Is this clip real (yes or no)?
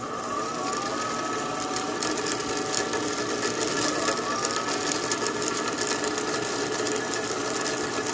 yes